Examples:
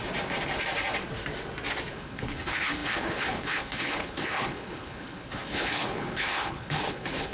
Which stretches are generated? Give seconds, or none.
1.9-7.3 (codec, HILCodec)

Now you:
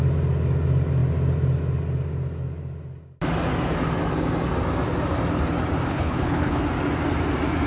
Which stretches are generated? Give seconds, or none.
5.9-6.6 (codec, HILCodec)

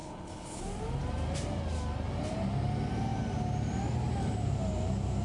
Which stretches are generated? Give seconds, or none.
0.0-0.6 (codec, HILCodec)

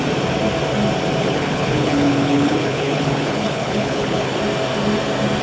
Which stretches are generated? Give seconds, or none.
1.2-4.4 (codec, HILCodec)

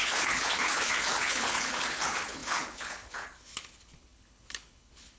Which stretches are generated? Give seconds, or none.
0.0-5.2 (codec, HILCodec)

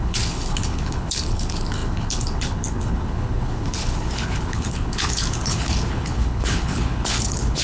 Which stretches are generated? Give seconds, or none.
0.0-7.6 (codec, HILCodec)

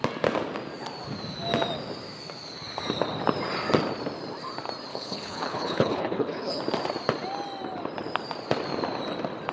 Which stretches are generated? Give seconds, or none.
4.9-6.6 (codec, HILCodec)